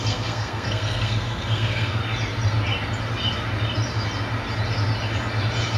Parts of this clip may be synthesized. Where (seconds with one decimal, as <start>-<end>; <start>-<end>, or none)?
0.0-2.0